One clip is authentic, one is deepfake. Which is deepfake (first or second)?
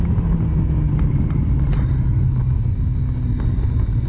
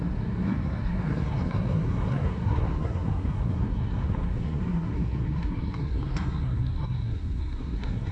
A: second